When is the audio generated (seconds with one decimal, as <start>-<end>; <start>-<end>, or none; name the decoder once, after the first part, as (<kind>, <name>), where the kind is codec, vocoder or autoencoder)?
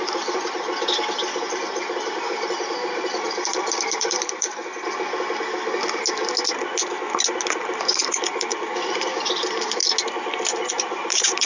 0.0-4.6 (vocoder, BigVGAN v2); 7.8-9.8; 10.7-11.5